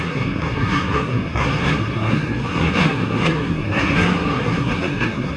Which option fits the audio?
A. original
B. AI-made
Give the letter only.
B